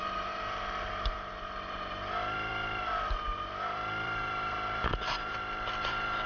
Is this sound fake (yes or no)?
yes